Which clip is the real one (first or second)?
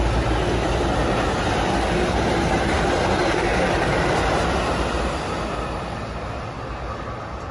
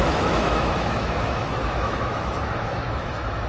first